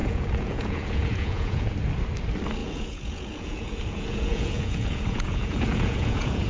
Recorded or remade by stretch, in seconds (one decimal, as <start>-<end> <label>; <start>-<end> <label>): 0.0-1.7 remade; 1.7-2.6 recorded; 2.6-6.5 remade